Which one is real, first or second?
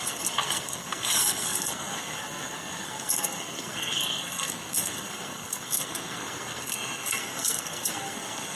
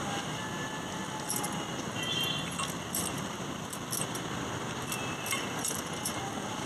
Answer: second